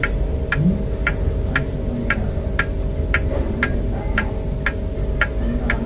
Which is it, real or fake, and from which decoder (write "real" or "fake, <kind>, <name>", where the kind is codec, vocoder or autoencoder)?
real